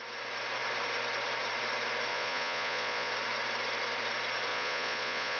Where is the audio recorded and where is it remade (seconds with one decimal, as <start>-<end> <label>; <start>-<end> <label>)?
0.0-2.1 recorded; 2.1-3.1 remade; 3.1-4.5 recorded; 4.5-5.4 remade